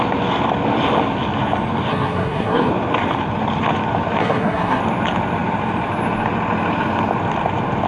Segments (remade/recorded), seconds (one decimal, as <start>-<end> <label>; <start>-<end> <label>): 0.0-1.9 recorded; 1.9-2.7 remade; 2.7-4.2 recorded; 4.2-4.8 remade; 4.8-7.9 recorded